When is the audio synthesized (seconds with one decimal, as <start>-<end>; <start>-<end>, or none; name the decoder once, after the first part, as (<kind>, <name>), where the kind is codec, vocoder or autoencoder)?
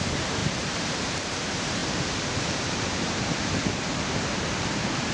0.0-5.1 (vocoder, BigVGAN v2)